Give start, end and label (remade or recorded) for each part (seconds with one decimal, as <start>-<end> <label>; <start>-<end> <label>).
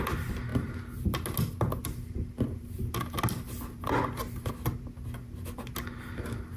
0.0-6.6 recorded